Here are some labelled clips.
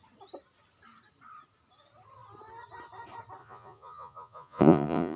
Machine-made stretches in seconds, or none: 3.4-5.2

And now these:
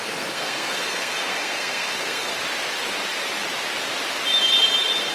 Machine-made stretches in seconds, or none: 0.0-2.3

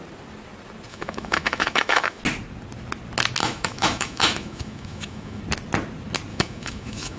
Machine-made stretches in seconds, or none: 0.9-2.2; 3.4-5.4; 6.3-7.2

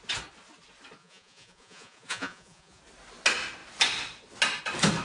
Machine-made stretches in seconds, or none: 1.0-2.8

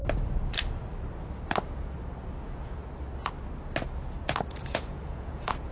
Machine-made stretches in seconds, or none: 2.4-2.8; 4.5-5.7

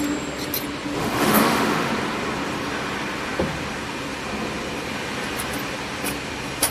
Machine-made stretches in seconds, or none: 1.0-1.9